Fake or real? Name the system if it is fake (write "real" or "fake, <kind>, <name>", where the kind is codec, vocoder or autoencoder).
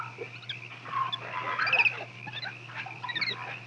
real